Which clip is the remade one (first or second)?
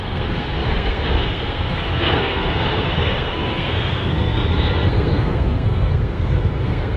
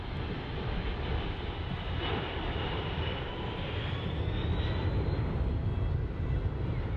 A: first